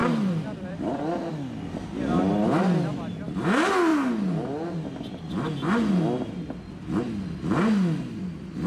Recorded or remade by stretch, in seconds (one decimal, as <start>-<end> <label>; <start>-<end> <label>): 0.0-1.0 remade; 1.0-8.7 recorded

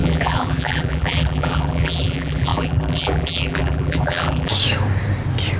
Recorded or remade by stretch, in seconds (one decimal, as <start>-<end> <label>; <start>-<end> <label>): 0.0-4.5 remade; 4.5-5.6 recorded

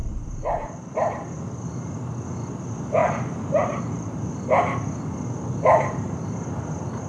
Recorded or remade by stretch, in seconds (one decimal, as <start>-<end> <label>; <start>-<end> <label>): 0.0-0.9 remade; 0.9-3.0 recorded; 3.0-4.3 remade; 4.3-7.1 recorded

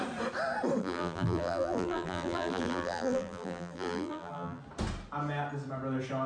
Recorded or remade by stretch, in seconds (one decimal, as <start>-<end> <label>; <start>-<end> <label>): 0.0-0.8 recorded; 0.8-4.6 remade; 4.6-6.3 recorded

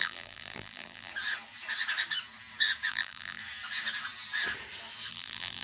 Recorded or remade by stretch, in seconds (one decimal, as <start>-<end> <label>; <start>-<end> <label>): 0.0-1.1 remade; 1.1-2.9 recorded; 2.9-3.4 remade; 3.4-5.1 recorded; 5.1-5.6 remade